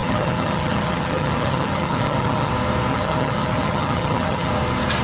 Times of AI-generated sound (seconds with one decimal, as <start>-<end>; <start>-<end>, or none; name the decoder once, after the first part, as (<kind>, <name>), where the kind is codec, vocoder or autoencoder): 0.0-2.5 (vocoder, HiFi-GAN); 2.9-4.5